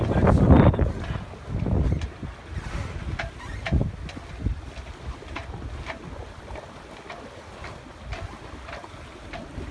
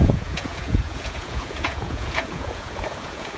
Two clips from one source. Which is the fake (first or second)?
second